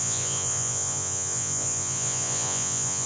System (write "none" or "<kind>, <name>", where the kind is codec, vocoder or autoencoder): vocoder, Vocos